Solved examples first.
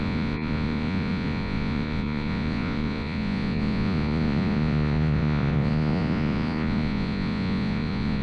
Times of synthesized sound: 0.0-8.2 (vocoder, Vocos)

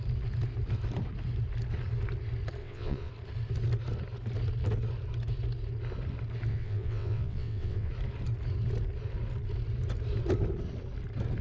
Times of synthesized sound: 2.6-3.1 (vocoder, WaveNeXt); 6.5-7.9

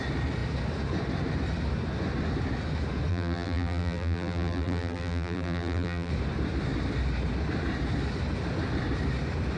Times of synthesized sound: 3.1-6.1 (vocoder, BigVGAN v2)

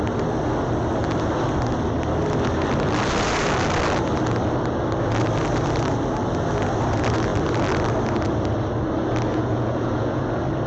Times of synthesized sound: 9.3-10.2 (vocoder, Vocos)

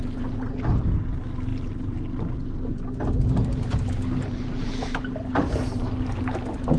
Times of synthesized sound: none

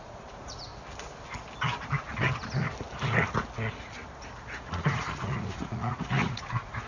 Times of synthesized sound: 0.0-0.7 (vocoder, Vocos); 4.7-6.9

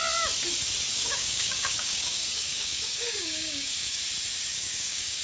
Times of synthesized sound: 0.9-4.0 (codec, DAC); 4.5-5.2

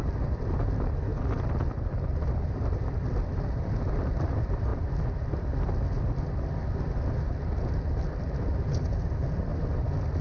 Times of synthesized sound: 0.0-1.1 (vocoder, BigVGAN v2); 2.3-9.5